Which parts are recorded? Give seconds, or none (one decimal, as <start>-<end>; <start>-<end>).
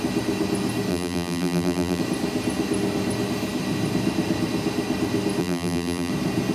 0.0-0.9; 2.0-5.4; 6.1-6.5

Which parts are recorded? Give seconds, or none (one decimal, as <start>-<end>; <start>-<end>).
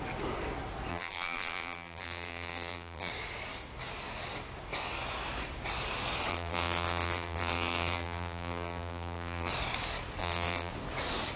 0.0-0.9; 3.1-6.3; 9.5-10.2; 10.7-11.4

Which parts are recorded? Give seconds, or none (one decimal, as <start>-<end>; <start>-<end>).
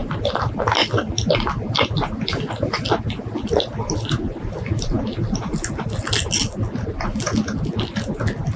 0.0-5.5; 6.3-8.6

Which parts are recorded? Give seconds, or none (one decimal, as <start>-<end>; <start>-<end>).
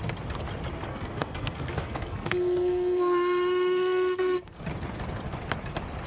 0.0-0.9; 4.6-6.1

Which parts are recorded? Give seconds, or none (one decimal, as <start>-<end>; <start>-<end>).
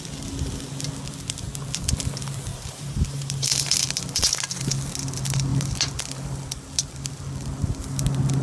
0.0-2.5; 3.9-8.4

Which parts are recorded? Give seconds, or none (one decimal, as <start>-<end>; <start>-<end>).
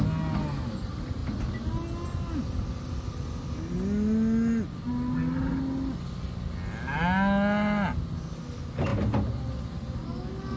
0.0-10.6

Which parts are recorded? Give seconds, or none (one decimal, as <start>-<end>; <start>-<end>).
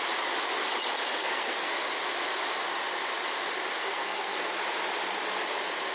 0.0-1.2; 1.7-3.8; 4.4-5.9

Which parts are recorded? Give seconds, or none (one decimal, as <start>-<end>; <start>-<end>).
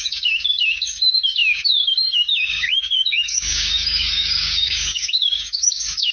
none